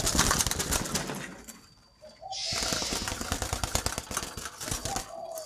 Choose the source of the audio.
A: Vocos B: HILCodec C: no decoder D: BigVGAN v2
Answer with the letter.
C